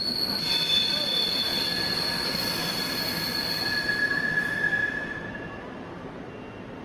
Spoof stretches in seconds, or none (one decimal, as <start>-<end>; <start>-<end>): none